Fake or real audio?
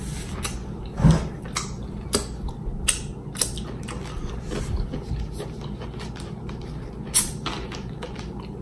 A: real